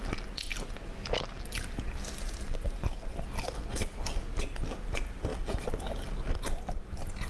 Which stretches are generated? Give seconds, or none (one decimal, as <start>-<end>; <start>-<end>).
none